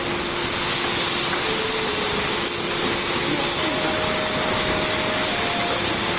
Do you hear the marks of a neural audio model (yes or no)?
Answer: no